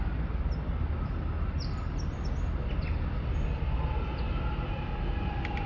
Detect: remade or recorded recorded